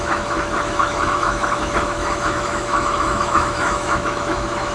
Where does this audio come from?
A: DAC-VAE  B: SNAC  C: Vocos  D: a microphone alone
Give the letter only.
A